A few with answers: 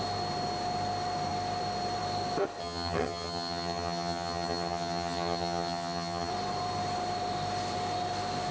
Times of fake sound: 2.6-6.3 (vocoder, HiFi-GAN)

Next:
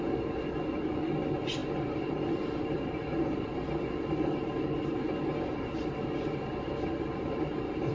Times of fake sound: none

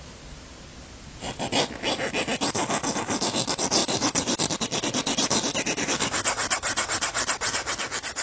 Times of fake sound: none

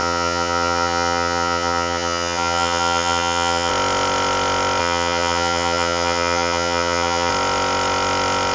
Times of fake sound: 0.0-3.7 (vocoder, HiFi-GAN); 4.8-7.3

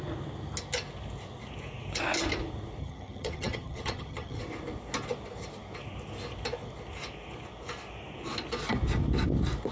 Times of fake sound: 2.8-4.4 (vocoder, HiFi-GAN)

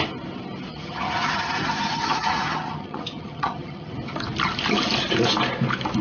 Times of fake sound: 0.7-3.9 (vocoder, HiFi-GAN)

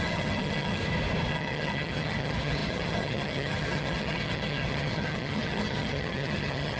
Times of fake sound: 0.0-0.8 (vocoder, HiFi-GAN); 1.3-6.8